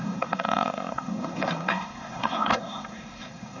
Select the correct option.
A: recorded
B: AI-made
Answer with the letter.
B